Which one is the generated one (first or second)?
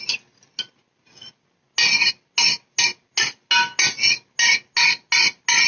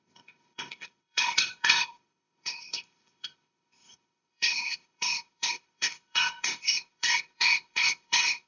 second